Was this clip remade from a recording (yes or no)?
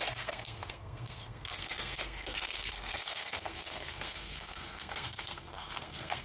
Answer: yes